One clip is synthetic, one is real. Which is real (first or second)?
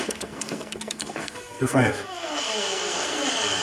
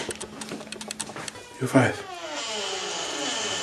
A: second